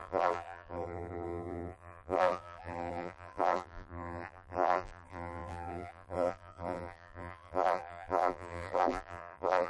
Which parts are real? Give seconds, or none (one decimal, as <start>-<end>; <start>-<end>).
none